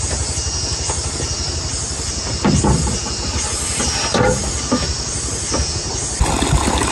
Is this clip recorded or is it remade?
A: recorded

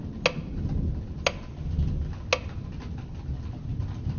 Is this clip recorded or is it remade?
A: recorded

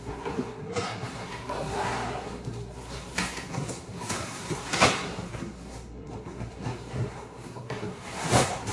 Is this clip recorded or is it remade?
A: remade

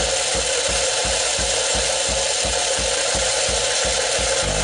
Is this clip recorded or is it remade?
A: recorded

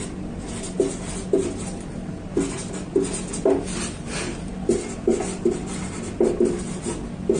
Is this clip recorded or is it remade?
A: recorded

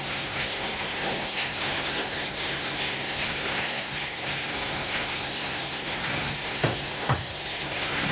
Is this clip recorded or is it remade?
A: remade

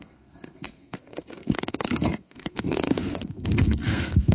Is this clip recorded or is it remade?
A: remade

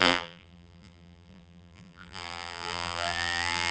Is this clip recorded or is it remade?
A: remade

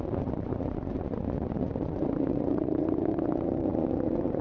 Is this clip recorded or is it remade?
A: remade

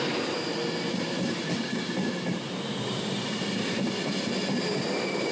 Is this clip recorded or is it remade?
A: remade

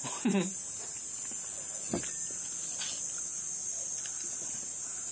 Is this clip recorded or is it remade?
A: recorded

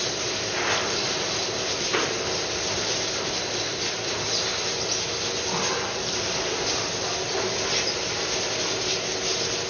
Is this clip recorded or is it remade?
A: recorded